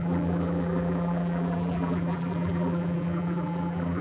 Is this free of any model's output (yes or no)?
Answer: no